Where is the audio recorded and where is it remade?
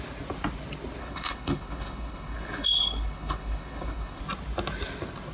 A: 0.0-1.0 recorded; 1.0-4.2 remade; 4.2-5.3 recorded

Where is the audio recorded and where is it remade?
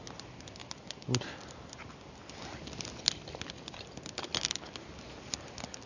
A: 0.0-5.9 recorded